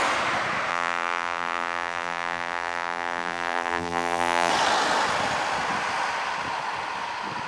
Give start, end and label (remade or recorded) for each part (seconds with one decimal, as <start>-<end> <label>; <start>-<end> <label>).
0.0-0.7 recorded; 0.7-4.5 remade; 4.5-7.5 recorded